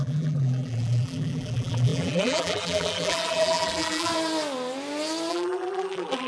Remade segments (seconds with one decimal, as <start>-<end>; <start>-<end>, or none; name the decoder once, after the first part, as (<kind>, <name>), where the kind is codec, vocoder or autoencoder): 0.0-4.1 (vocoder, BigVGAN v2); 5.3-6.3